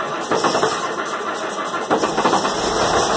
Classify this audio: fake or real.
real